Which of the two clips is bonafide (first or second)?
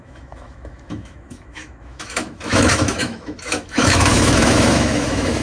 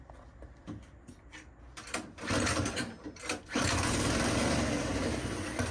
second